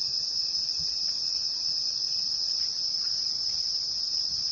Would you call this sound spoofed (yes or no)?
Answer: yes